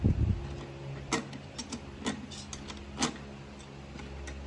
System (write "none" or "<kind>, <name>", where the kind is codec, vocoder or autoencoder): none